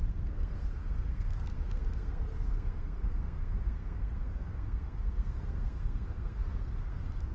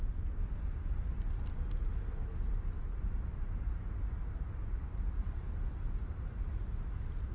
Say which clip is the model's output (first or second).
first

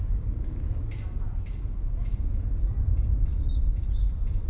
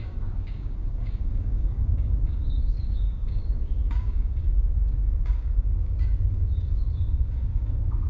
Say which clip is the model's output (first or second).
second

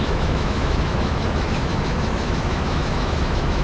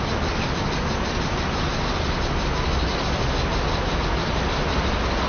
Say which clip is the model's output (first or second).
first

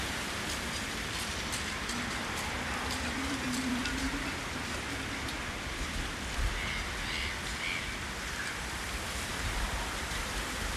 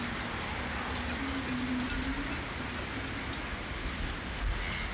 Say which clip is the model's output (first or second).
first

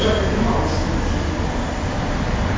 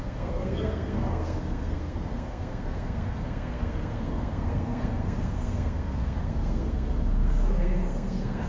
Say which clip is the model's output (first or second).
second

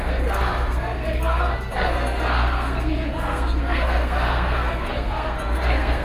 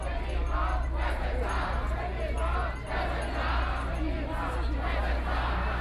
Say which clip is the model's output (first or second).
first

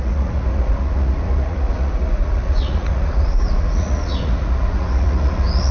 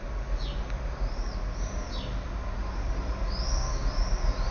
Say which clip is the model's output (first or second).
first